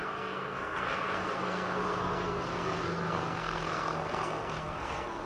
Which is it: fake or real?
fake